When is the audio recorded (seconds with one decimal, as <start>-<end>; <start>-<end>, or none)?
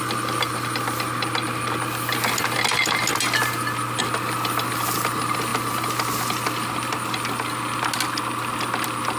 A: 0.0-9.2